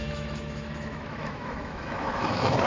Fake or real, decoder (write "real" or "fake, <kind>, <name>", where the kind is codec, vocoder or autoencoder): fake, autoencoder, DAC-VAE